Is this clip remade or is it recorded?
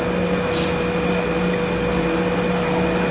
recorded